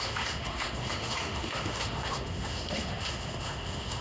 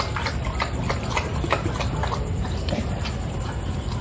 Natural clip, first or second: second